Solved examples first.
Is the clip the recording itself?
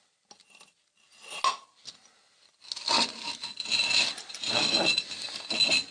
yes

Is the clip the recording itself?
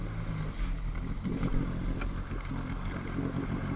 yes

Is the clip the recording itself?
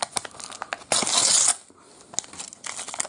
yes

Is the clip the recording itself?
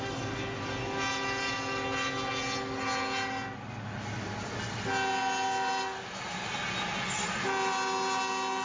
yes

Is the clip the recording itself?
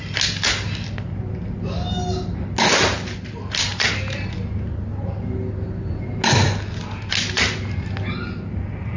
yes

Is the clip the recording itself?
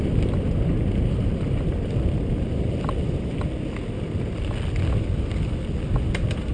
yes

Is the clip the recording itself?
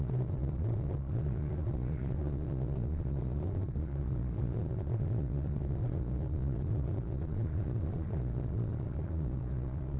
no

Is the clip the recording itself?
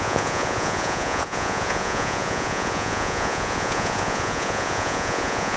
no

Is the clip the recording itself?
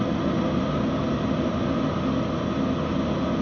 yes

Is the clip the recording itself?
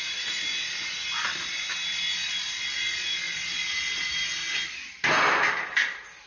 yes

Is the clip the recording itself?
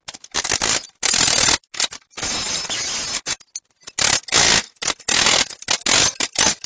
yes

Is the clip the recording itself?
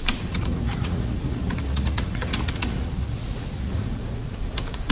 no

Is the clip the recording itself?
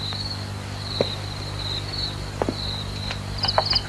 yes